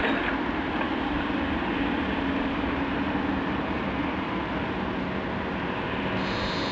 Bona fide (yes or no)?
yes